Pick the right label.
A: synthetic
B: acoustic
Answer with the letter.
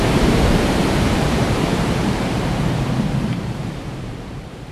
A